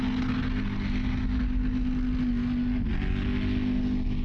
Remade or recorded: recorded